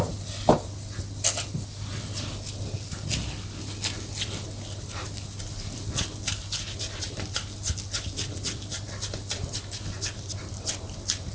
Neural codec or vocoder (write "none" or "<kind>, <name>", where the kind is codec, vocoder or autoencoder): none